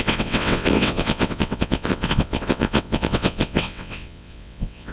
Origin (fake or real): fake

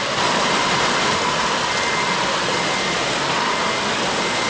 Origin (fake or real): real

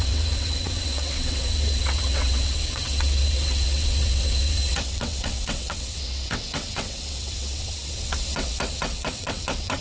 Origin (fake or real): fake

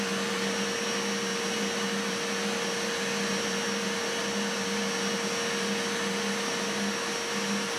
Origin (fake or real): real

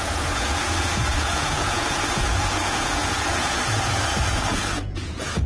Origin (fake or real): fake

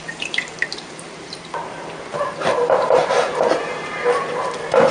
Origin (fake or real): fake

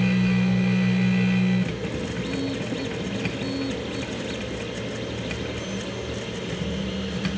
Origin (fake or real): real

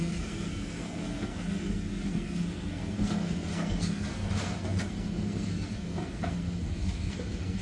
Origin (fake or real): fake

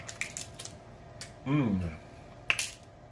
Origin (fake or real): real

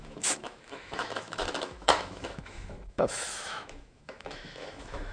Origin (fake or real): fake